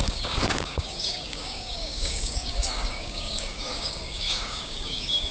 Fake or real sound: fake